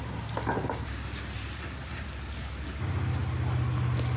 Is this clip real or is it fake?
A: real